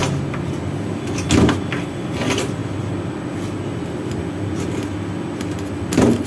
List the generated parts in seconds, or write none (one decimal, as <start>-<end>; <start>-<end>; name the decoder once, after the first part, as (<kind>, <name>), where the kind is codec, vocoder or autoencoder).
none